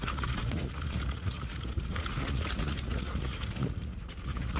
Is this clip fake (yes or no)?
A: yes